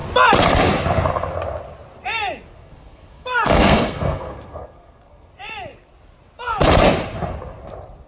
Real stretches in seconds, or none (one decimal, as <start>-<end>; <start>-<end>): 0.0-2.6; 5.3-8.1